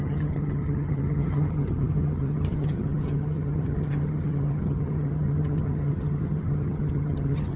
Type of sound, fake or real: fake